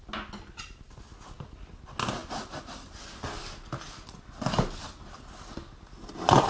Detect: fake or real real